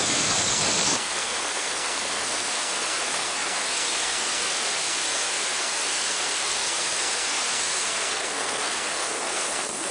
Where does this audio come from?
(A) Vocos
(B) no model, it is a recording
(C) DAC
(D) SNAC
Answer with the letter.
D